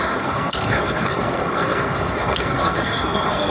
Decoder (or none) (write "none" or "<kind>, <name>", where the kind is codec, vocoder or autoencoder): codec, SNAC